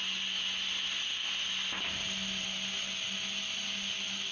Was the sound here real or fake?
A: real